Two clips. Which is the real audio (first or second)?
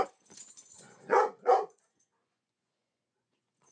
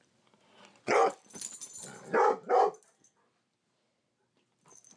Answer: second